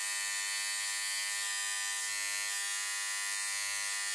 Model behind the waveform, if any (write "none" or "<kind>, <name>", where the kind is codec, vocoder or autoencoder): none